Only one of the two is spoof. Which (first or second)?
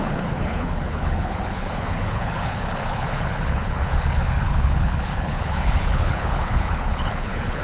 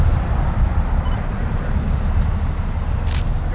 first